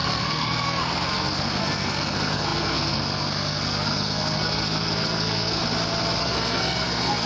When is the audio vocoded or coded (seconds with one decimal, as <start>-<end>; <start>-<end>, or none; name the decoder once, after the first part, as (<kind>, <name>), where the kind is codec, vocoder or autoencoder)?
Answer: 0.0-5.6 (codec, SNAC); 6.2-7.3